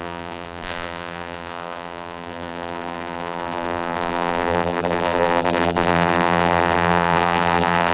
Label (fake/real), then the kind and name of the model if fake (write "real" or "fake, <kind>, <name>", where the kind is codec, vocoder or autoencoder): fake, vocoder, BigVGAN v2